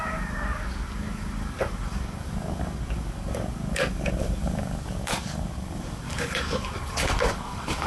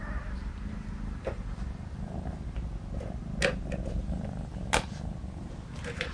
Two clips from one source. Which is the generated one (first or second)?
first